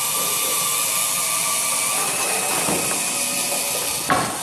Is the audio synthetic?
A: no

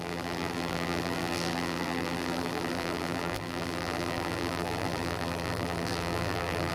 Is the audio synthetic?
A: yes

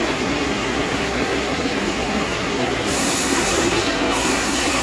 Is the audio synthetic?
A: yes